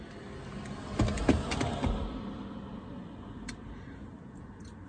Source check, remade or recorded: recorded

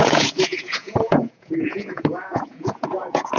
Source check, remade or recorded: remade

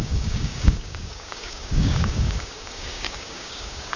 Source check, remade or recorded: remade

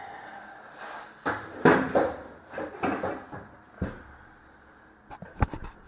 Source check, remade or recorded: recorded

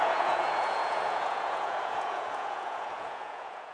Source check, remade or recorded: remade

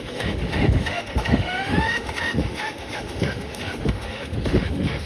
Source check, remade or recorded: remade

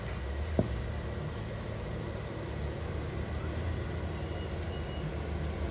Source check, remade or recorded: recorded